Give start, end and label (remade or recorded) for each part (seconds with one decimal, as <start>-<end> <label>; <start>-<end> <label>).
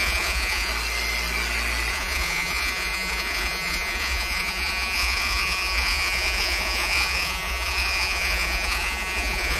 0.0-0.7 remade; 0.7-1.9 recorded; 1.9-9.6 remade